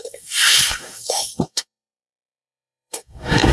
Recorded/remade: remade